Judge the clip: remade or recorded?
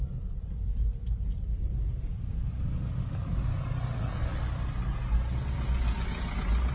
recorded